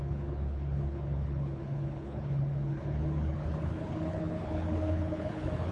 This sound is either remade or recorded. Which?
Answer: remade